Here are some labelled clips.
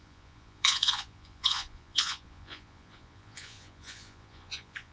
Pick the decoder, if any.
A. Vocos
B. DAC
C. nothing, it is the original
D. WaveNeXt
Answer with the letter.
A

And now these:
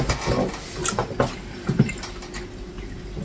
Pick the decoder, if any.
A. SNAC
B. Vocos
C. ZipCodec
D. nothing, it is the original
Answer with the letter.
D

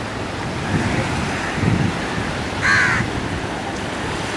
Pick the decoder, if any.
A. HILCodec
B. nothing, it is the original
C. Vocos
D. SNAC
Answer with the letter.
B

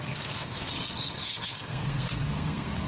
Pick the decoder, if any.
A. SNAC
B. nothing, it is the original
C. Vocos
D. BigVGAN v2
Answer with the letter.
A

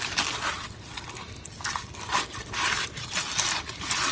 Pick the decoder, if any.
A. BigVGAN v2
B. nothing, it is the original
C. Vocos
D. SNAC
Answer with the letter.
B